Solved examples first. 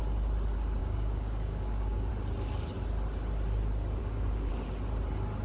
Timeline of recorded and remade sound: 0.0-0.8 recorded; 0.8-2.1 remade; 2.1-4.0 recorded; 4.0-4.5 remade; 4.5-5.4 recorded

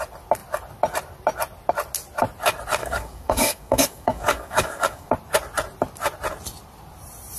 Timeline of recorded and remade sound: 0.0-2.8 recorded; 2.8-5.1 remade; 5.1-7.4 recorded

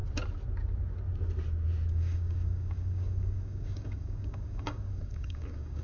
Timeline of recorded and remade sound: 0.0-1.9 recorded; 1.9-5.8 remade